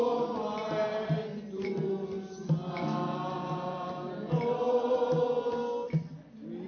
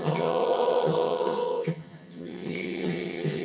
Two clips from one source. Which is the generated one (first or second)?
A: second